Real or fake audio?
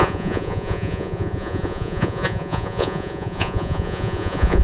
fake